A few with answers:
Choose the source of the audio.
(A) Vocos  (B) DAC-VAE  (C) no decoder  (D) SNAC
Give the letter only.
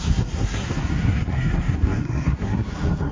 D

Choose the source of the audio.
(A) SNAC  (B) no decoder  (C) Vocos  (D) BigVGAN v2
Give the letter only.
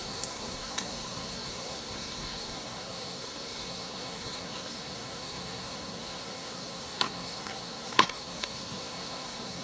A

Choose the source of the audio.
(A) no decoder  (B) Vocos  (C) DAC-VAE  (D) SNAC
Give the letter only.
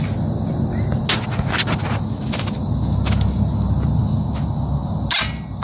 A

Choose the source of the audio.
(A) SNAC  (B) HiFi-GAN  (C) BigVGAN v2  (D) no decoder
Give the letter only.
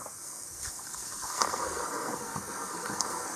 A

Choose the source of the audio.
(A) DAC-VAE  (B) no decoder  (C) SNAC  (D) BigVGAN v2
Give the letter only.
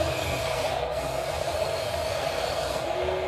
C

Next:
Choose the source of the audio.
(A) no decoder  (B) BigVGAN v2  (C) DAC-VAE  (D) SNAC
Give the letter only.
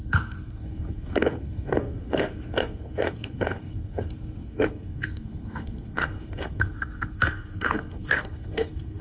D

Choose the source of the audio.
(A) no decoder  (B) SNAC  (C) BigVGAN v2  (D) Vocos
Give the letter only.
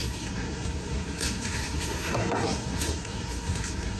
B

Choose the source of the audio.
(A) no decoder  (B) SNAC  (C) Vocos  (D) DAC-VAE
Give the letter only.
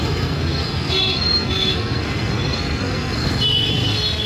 B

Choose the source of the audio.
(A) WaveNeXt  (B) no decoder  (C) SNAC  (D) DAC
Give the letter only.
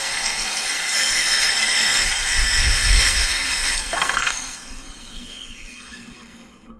C